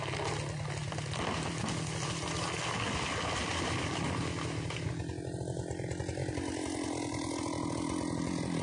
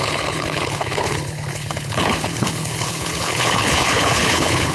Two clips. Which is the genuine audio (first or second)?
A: first